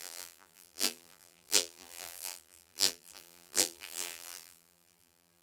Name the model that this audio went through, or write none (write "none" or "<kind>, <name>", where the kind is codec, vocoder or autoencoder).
vocoder, BigVGAN v2